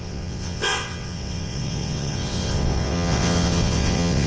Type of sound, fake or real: fake